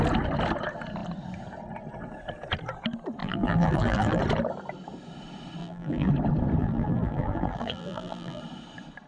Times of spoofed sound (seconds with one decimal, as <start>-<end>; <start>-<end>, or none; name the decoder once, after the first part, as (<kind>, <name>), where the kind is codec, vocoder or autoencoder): 3.2-4.2 (vocoder, BigVGAN v2); 5.6-6.1; 6.6-8.4